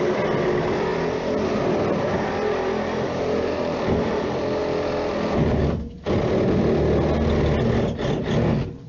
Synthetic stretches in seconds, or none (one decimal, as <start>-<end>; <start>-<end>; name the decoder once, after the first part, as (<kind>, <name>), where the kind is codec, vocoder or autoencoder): none

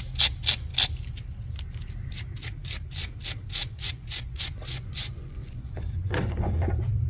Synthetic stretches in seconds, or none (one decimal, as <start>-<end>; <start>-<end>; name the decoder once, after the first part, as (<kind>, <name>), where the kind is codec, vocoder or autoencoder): 3.6-7.1 (vocoder, Vocos)

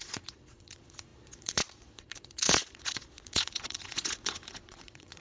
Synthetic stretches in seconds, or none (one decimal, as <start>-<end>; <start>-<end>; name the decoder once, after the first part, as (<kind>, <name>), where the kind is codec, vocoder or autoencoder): 0.0-5.2 (vocoder, Vocos)

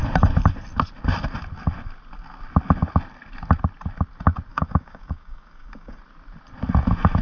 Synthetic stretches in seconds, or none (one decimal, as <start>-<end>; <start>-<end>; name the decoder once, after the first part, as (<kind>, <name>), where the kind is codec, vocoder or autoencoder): 4.5-6.0 (codec, DAC)

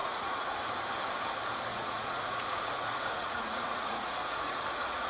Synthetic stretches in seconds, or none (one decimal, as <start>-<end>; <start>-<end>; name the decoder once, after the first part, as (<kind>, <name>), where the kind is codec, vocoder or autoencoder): 0.0-0.7 (vocoder, Vocos); 1.7-5.1